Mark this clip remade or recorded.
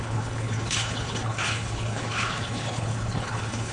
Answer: remade